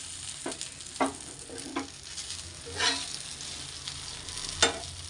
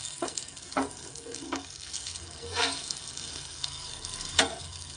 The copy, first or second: second